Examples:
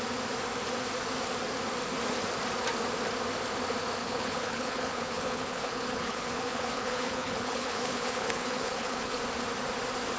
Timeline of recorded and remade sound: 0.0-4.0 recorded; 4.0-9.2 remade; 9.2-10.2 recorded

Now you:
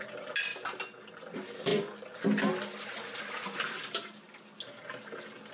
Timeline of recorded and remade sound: 0.0-5.5 recorded

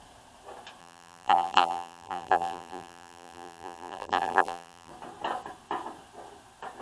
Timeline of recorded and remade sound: 0.0-0.8 recorded; 0.8-4.9 remade; 4.9-6.8 recorded

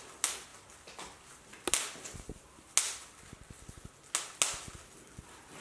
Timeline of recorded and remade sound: 0.0-5.6 recorded

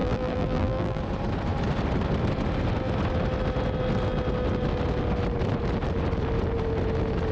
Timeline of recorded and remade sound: 0.0-1.0 remade; 1.0-7.3 recorded

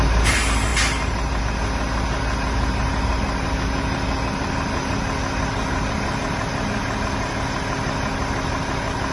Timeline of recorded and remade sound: 0.0-9.1 recorded

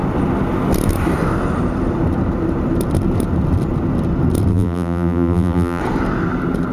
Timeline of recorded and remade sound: 0.0-4.5 recorded; 4.5-5.8 remade; 5.8-6.7 recorded

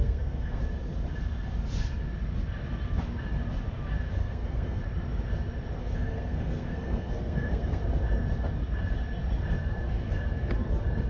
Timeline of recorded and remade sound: 0.0-0.6 remade; 0.6-4.2 recorded; 4.2-4.8 remade; 4.8-5.8 recorded; 5.8-7.8 remade; 7.8-11.1 recorded